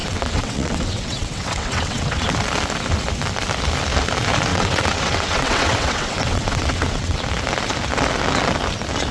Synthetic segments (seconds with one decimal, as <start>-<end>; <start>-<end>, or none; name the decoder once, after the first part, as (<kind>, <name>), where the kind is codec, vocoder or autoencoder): 0.0-2.3 (vocoder, WaveNeXt); 4.5-7.2